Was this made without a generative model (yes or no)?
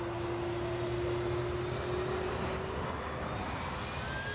yes